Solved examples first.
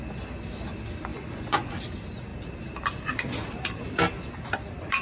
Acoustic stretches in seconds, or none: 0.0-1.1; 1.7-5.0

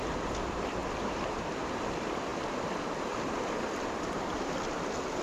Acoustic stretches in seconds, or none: 2.3-3.0

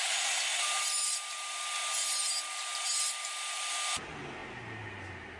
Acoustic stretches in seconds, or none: 0.0-5.4

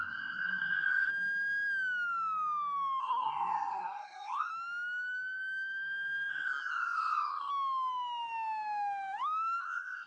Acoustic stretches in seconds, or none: 1.1-3.0; 4.5-6.3; 7.5-9.6